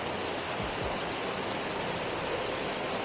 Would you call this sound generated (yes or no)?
no